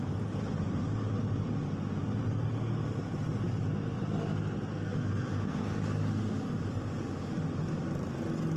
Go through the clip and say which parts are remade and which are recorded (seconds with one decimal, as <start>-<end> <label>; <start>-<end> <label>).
0.0-4.7 recorded; 4.7-5.8 remade; 5.8-8.6 recorded